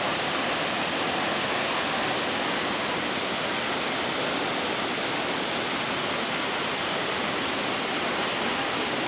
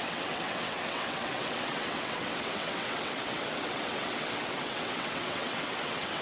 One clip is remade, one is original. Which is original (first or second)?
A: first